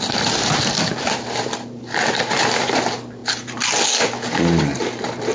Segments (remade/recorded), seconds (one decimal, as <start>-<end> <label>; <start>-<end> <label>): 0.0-5.3 recorded